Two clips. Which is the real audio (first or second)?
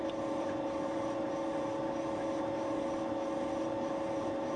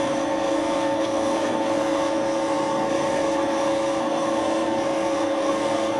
first